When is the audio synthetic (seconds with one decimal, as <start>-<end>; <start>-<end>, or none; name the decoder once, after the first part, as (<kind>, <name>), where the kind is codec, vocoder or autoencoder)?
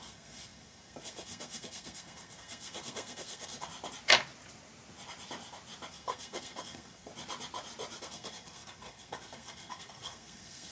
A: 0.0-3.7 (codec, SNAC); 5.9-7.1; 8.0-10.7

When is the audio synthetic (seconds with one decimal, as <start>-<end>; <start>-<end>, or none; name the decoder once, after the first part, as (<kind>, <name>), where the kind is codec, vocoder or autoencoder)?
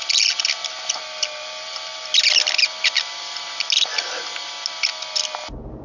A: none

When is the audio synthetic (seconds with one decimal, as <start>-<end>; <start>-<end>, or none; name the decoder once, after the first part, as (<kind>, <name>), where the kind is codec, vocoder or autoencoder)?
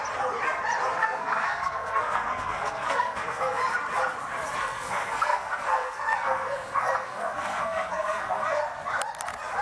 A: 1.0-3.6 (codec, SNAC); 4.6-8.6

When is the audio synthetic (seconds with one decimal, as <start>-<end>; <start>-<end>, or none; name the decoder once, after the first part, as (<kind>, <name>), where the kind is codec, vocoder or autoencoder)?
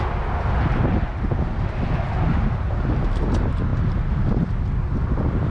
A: none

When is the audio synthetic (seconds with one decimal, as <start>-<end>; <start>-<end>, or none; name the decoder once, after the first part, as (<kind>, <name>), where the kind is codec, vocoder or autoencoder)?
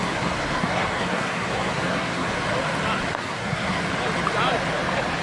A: 0.0-2.4 (codec, SNAC); 3.2-3.8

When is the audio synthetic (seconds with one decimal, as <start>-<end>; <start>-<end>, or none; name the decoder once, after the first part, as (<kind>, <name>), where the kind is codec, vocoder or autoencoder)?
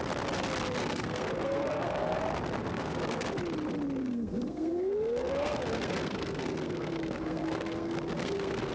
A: 0.8-2.2 (codec, SNAC); 2.6-3.4; 4.0-8.7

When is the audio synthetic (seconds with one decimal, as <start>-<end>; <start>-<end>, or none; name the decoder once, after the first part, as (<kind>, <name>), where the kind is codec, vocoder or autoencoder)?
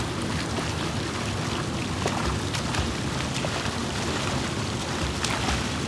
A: none